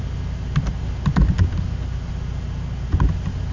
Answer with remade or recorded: recorded